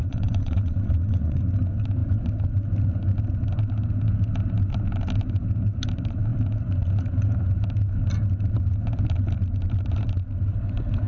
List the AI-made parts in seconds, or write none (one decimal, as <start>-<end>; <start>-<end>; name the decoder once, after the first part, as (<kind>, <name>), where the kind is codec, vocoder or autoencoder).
0.0-1.4 (vocoder, WaveNeXt)